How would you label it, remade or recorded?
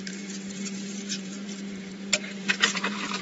remade